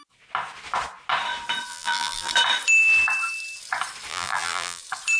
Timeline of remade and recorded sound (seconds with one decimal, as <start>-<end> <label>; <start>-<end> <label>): 0.0-1.7 recorded; 1.7-2.3 remade; 2.3-4.1 recorded; 4.1-4.8 remade; 4.8-5.2 recorded